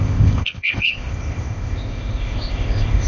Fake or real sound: fake